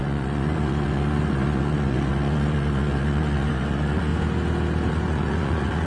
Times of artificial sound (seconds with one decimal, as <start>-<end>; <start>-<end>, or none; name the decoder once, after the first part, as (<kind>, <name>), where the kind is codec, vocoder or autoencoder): 0.0-4.1 (vocoder, Vocos); 4.9-5.9